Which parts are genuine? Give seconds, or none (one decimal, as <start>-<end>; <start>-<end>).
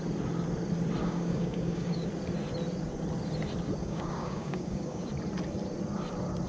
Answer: 0.0-1.0; 2.1-3.8; 5.1-6.5